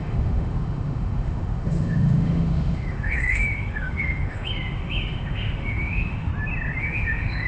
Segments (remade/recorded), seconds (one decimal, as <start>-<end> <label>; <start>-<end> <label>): 0.0-6.3 remade; 6.3-6.8 recorded; 6.8-7.5 remade